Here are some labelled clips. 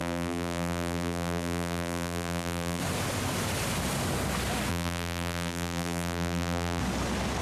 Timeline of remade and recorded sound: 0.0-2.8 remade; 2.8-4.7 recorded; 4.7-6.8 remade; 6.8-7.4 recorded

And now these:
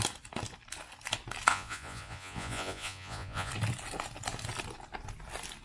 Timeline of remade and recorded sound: 0.0-1.5 recorded; 1.5-3.5 remade; 3.5-5.6 recorded

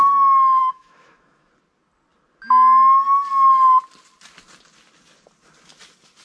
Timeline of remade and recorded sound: 0.0-0.6 recorded; 0.6-1.5 remade; 1.5-6.2 recorded

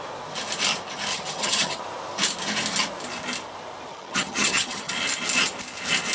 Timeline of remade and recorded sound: 0.0-1.1 recorded; 1.1-1.8 remade; 1.8-3.9 recorded; 3.9-4.9 remade; 4.9-6.1 recorded

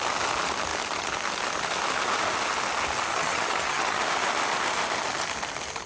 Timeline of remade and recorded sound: 0.0-3.1 recorded; 3.1-4.0 remade; 4.0-5.9 recorded

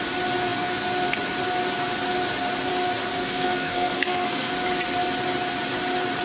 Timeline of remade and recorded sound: 0.0-3.1 recorded; 3.1-4.5 remade; 4.5-6.2 recorded

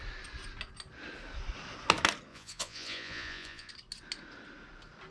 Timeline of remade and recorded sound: 0.0-2.3 recorded; 2.3-3.7 remade; 3.7-5.1 recorded

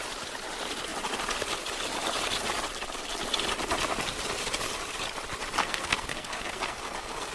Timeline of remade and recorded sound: 0.0-5.6 recorded; 5.6-7.3 remade